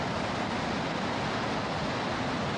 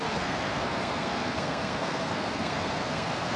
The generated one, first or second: second